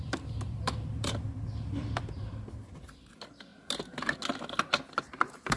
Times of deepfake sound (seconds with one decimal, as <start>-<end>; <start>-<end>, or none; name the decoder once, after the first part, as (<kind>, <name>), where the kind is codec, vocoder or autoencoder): 0.0-3.5 (vocoder, BigVGAN v2); 4.6-5.6